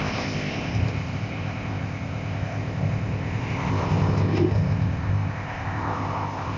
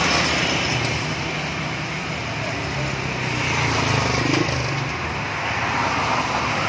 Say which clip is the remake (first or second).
first